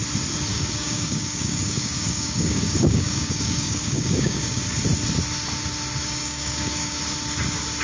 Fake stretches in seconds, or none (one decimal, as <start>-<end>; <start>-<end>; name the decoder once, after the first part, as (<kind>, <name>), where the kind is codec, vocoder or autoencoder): 0.5-4.6 (codec, DAC); 6.0-7.0